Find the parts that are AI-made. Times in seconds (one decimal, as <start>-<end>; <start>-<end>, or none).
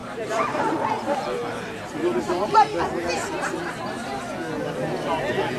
0.0-0.6; 1.5-2.5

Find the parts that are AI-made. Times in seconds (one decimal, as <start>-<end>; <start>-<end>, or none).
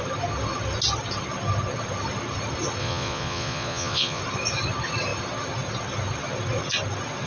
2.8-4.2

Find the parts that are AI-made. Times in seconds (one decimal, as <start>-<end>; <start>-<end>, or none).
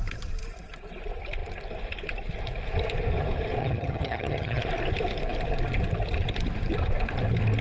3.6-4.6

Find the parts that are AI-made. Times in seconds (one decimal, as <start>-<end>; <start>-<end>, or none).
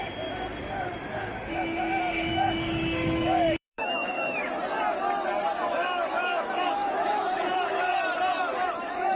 0.6-4.4; 5.7-7.9; 8.4-9.2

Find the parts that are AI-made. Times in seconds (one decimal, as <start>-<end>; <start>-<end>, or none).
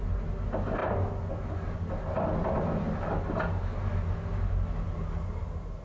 none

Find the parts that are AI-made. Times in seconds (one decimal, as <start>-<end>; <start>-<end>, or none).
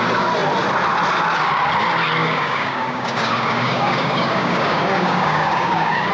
2.2-6.1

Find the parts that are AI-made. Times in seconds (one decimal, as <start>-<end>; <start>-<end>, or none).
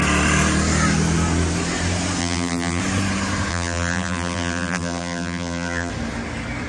2.2-2.8; 3.5-5.9